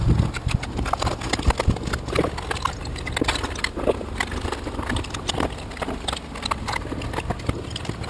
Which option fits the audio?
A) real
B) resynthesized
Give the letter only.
A